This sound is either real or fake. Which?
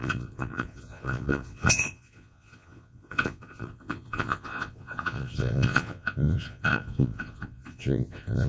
fake